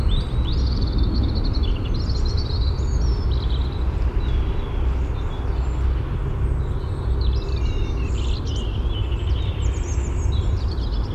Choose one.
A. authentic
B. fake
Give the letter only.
A